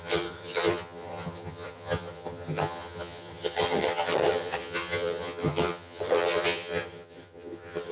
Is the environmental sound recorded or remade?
remade